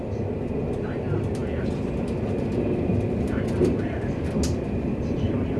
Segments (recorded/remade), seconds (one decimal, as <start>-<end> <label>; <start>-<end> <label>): 0.0-5.6 recorded